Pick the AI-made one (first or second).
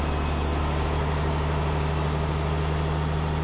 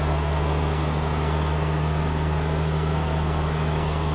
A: second